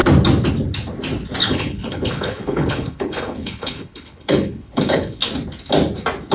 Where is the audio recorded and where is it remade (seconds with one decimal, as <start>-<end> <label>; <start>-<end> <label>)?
0.0-1.4 recorded; 1.4-5.2 remade; 5.2-6.3 recorded